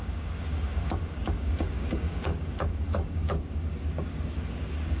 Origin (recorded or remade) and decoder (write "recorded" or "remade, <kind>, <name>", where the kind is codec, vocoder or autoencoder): remade, codec, DAC